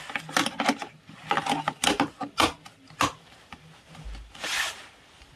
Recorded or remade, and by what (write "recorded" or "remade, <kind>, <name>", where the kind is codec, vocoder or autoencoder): recorded